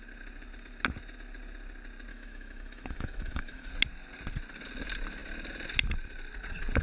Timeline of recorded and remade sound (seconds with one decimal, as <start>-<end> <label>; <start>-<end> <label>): 0.0-2.1 recorded; 2.1-3.7 remade; 3.7-6.8 recorded